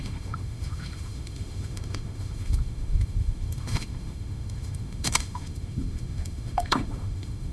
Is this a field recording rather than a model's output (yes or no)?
no